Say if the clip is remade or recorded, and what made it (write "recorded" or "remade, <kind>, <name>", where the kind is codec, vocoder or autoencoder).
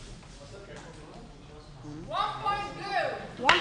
recorded